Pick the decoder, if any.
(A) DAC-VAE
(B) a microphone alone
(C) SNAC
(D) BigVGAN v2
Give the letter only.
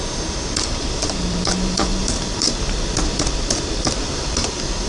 D